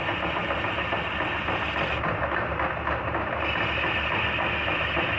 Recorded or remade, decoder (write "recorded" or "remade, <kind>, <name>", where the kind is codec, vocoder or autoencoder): recorded